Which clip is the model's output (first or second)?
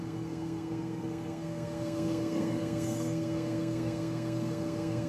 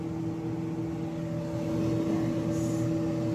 first